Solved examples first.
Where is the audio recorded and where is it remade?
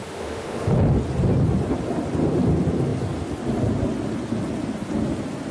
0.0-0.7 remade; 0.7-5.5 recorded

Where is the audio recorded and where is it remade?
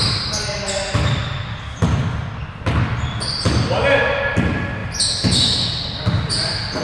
0.0-6.8 recorded